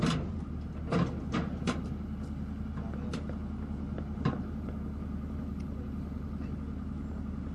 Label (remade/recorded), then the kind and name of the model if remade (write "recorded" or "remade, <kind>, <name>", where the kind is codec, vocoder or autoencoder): recorded